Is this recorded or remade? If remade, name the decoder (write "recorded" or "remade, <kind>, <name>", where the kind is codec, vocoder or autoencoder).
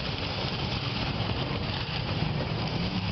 remade, vocoder, BigVGAN v2